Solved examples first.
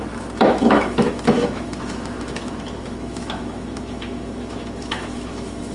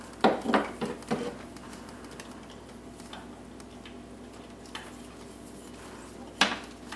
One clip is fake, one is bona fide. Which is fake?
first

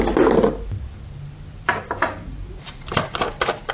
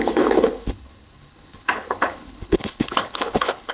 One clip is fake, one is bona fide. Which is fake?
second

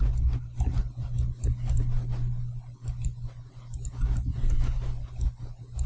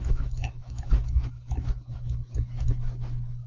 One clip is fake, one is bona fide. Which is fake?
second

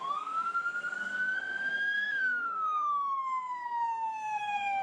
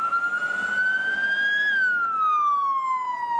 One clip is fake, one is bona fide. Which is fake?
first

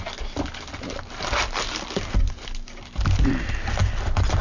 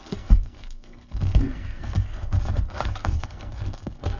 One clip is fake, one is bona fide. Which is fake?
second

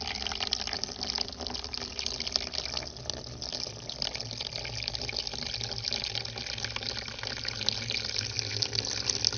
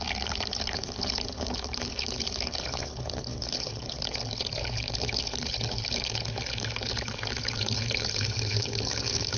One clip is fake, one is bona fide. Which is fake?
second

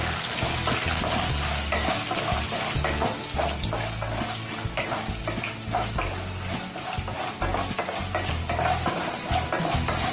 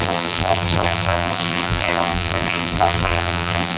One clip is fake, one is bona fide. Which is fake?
second